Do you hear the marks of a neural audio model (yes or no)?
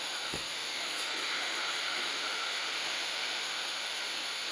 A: yes